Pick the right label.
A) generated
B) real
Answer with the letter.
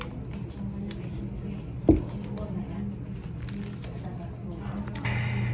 B